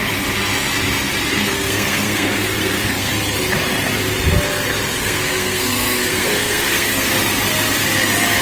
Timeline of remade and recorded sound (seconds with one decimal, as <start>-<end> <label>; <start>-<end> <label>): 0.0-1.4 recorded; 1.4-3.1 remade; 3.1-5.0 recorded; 5.0-7.2 remade; 7.2-8.4 recorded